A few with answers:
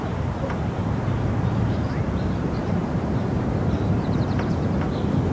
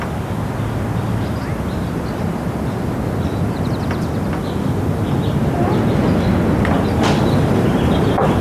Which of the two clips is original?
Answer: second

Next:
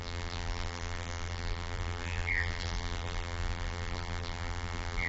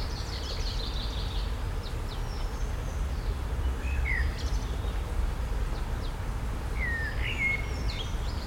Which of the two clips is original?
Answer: second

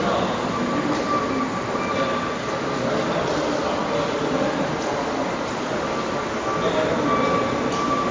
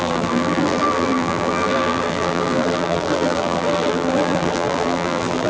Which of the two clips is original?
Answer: first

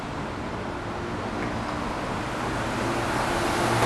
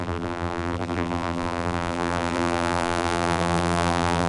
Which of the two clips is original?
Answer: first